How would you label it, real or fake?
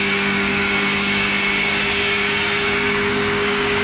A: fake